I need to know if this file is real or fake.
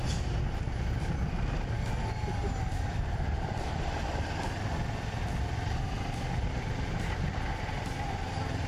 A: real